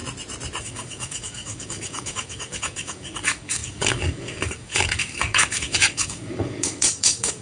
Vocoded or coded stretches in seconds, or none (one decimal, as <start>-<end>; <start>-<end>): 0.6-7.4